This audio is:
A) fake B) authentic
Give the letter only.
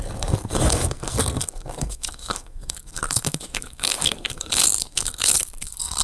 A